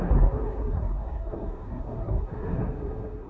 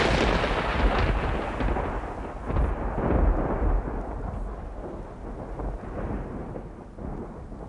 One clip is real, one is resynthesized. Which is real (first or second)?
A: second